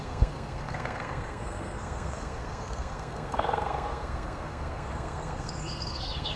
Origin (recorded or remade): remade